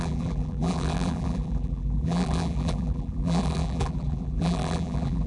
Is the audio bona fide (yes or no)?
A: no